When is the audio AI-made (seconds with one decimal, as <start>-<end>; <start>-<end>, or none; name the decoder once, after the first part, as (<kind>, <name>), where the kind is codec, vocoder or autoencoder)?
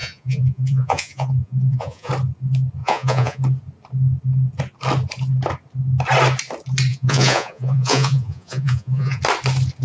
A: 0.0-2.1 (vocoder, Vocos); 2.8-3.4; 6.9-9.2